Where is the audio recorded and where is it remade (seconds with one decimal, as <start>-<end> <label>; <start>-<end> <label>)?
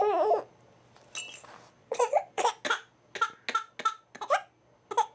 0.0-1.8 recorded; 1.8-2.5 remade; 2.5-5.1 recorded